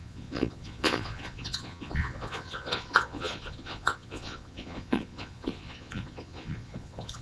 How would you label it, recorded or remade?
remade